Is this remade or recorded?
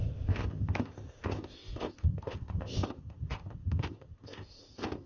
remade